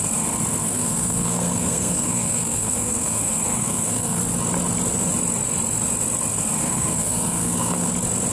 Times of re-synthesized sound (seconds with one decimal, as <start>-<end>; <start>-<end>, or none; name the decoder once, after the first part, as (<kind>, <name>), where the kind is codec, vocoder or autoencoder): 0.6-4.2 (codec, SNAC); 6.6-7.9